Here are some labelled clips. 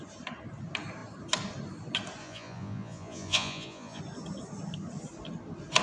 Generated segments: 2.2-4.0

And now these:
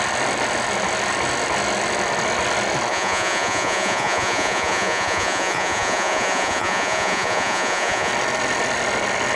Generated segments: 2.9-8.1

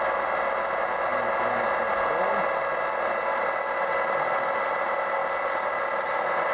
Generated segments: none

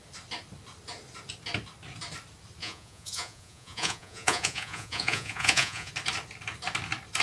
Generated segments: 2.6-5.9

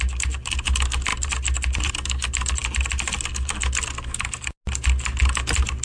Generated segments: none

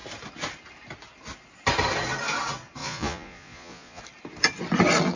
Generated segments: 2.8-4.0